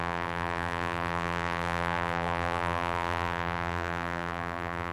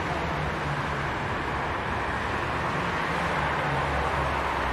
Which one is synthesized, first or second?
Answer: first